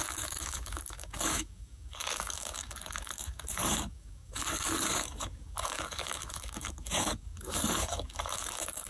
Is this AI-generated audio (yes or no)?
yes